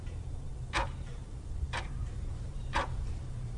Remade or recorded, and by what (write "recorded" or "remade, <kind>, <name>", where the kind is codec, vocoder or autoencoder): remade, vocoder, BigVGAN v2